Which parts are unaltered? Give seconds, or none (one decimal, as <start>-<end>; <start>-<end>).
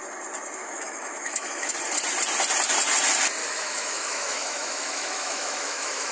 0.0-0.6; 1.7-3.4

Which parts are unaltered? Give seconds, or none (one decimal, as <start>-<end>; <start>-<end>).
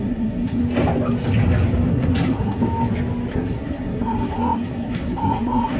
0.6-1.9; 2.6-3.3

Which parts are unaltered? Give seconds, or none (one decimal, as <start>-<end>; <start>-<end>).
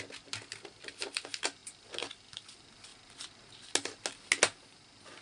0.0-5.2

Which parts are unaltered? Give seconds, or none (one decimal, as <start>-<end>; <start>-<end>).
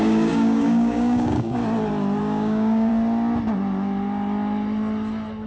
1.6-2.2; 2.9-5.5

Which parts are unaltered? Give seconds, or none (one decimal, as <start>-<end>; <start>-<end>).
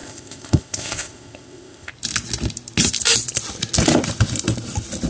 1.9-5.1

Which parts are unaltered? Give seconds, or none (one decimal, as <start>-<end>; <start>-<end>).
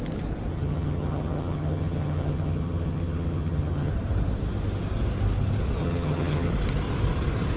0.0-0.5; 3.9-5.8; 6.5-7.6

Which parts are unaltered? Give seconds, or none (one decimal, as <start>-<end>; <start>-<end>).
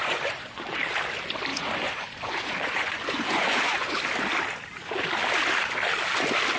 0.8-1.5; 4.0-6.6